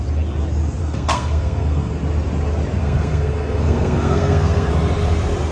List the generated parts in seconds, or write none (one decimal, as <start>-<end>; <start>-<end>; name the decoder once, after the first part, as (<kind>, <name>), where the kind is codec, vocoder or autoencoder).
0.8-1.9 (codec, SNAC); 2.8-4.7